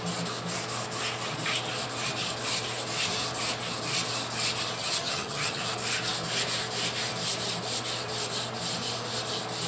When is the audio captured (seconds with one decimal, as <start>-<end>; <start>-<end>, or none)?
0.0-4.8; 5.6-9.7